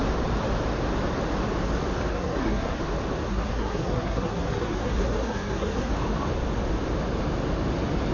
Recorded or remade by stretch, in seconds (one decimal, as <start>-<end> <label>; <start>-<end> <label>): 0.0-2.1 recorded; 2.1-2.8 remade; 2.8-3.3 recorded; 3.3-5.9 remade; 5.9-8.1 recorded